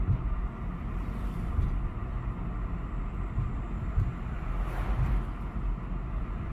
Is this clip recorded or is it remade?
recorded